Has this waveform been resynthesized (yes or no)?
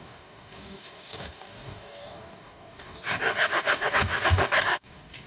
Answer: yes